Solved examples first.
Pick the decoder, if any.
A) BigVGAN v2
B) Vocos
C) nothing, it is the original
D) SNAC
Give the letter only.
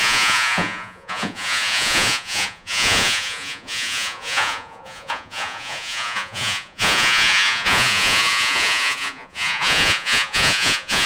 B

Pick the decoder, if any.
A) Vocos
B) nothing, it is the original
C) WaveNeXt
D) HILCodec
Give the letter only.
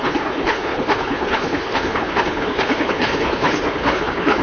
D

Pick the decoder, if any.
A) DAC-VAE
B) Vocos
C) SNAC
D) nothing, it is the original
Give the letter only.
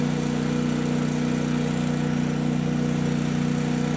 D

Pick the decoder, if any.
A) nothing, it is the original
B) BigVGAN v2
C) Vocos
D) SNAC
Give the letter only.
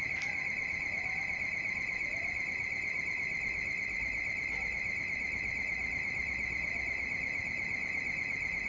B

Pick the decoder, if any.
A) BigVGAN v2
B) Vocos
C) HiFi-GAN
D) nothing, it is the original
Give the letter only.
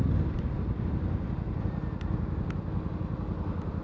D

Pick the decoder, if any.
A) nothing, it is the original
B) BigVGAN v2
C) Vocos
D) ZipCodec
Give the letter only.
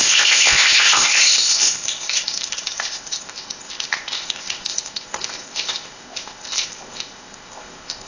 D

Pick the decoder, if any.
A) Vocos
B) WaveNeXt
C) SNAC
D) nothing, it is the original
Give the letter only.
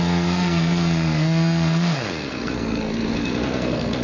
C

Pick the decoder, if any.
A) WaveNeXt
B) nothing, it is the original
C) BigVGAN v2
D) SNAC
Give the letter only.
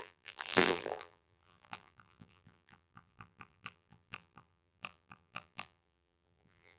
C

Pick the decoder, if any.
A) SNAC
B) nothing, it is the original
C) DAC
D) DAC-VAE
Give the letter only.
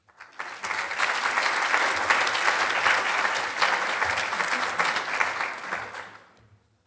B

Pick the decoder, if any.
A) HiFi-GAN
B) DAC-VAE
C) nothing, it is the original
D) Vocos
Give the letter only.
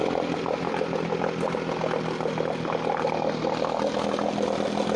C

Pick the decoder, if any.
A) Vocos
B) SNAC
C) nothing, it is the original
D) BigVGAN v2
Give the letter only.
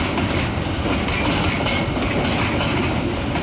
C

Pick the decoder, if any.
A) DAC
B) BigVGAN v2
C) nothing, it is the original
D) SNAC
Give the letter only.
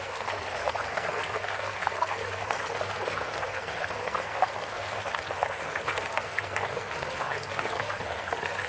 D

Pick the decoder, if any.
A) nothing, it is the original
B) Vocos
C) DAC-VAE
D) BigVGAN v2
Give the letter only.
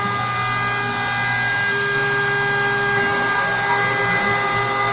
A